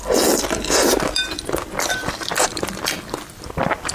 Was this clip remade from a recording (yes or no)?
no